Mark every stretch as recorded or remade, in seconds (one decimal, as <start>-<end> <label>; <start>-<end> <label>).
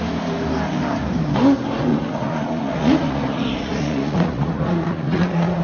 0.0-1.9 recorded; 1.9-5.6 remade